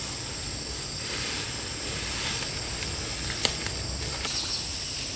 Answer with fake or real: real